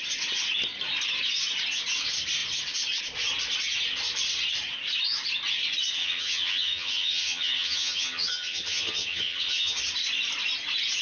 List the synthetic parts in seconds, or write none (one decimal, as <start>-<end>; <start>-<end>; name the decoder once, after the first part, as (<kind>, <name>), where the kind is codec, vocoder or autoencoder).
6.0-9.8 (vocoder, HiFi-GAN)